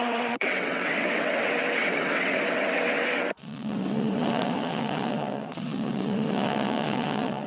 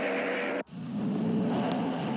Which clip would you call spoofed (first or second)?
first